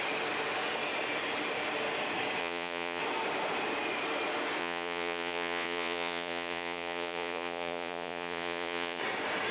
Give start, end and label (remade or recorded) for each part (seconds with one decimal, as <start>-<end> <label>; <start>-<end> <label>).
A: 0.0-2.4 recorded; 2.4-3.0 remade; 3.0-4.6 recorded; 4.6-9.0 remade; 9.0-9.5 recorded